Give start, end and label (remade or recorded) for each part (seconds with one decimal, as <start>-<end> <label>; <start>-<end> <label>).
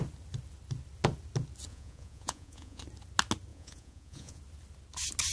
0.0-1.7 recorded; 1.7-2.8 remade; 2.8-3.5 recorded; 3.5-4.4 remade; 4.4-5.3 recorded